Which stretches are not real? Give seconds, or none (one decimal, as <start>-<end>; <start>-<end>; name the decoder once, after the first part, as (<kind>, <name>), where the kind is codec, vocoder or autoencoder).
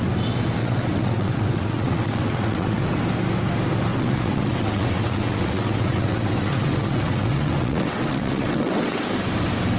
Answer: 0.6-2.9 (vocoder, WaveNeXt); 3.9-9.0